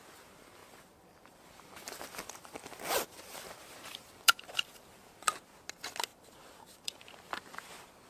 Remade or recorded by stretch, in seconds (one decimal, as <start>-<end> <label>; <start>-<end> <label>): 0.0-0.6 recorded; 0.6-5.5 remade; 5.5-6.1 recorded; 6.1-7.0 remade; 7.0-8.1 recorded